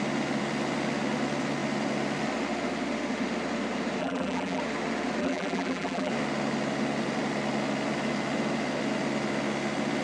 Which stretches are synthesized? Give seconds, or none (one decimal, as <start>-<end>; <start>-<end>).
4.0-4.6; 5.2-6.1